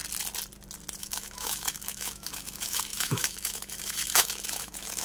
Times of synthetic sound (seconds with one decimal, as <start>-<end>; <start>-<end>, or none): 1.0-5.0